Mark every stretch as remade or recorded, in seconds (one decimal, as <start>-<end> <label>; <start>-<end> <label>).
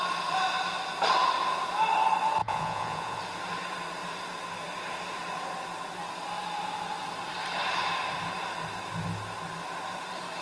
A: 0.0-2.4 recorded; 2.4-3.2 remade; 3.2-10.4 recorded